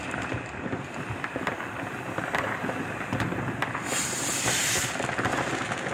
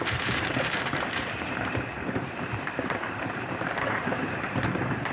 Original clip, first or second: first